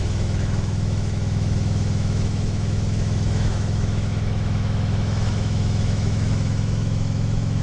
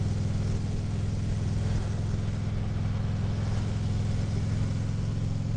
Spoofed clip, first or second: first